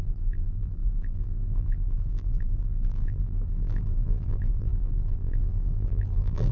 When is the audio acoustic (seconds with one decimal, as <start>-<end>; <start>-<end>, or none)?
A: none